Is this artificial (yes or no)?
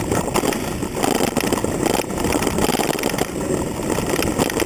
no